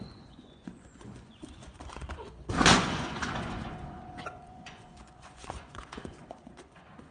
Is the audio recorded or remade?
remade